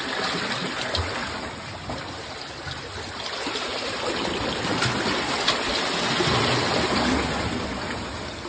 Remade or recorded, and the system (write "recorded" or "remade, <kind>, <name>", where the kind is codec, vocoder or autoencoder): recorded